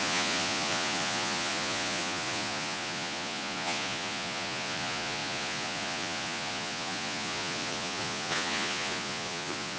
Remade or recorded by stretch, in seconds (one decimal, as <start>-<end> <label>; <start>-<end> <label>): 0.0-9.8 remade